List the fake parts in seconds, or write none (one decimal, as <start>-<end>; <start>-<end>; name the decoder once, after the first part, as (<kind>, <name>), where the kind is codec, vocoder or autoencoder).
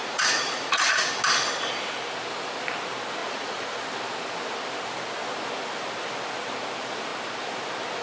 0.0-0.8 (vocoder, Vocos); 3.2-3.8